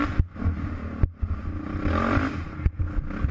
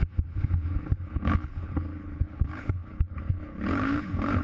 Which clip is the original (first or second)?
first